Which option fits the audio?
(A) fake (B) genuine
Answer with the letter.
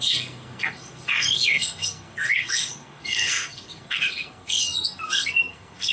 A